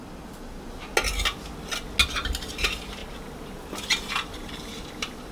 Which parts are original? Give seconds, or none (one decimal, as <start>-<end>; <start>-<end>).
0.0-2.1; 3.0-4.1

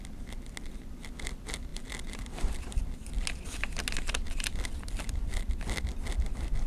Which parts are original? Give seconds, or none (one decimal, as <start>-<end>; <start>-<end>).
0.0-6.7